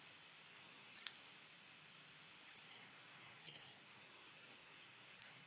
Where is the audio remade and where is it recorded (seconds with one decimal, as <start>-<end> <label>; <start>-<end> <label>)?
0.0-0.5 recorded; 0.5-1.1 remade; 1.1-2.7 recorded; 2.7-5.5 remade

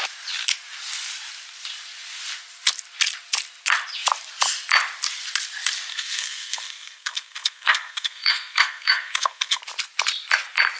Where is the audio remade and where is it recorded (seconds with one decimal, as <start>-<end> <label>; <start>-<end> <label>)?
0.0-5.9 recorded; 5.9-9.6 remade; 9.6-10.8 recorded

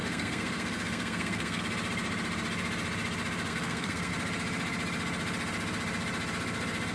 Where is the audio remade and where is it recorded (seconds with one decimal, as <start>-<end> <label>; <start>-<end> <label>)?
0.0-1.6 remade; 1.6-3.5 recorded; 3.5-4.1 remade; 4.1-6.9 recorded

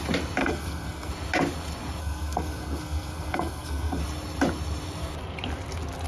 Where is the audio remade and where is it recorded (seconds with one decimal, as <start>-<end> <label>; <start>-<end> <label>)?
0.0-0.4 recorded; 0.4-1.1 remade; 1.1-2.0 recorded; 2.0-4.0 remade; 4.0-6.1 recorded

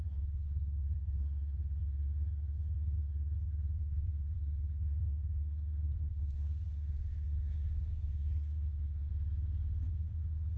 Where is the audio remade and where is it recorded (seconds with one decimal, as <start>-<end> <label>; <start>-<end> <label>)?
0.0-9.1 remade; 9.1-9.9 recorded; 9.9-10.6 remade

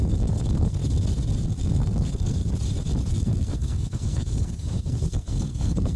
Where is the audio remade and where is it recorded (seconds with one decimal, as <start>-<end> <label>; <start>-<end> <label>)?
0.0-0.8 remade; 0.8-1.6 recorded; 1.6-2.4 remade; 2.4-3.1 recorded; 3.1-6.0 remade

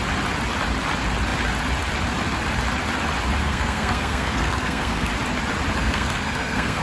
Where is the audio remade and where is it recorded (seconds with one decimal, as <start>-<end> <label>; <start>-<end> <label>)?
0.0-3.4 recorded; 3.4-5.1 remade; 5.1-5.8 recorded; 5.8-6.8 remade

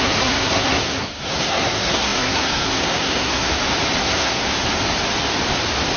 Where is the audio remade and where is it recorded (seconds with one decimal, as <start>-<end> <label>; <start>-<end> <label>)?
0.0-3.5 remade; 3.5-4.0 recorded; 4.0-4.4 remade; 4.4-6.0 recorded